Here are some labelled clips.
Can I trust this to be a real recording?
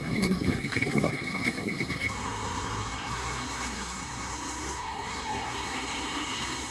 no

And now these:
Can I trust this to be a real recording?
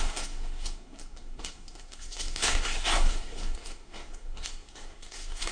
no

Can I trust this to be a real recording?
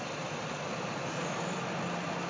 yes